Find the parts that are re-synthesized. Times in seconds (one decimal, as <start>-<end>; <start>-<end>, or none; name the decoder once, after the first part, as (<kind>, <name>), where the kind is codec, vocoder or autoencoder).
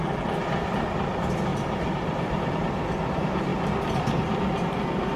1.5-2.5 (vocoder, BigVGAN v2)